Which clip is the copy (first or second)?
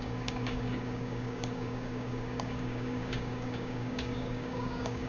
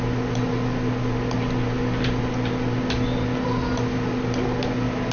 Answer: first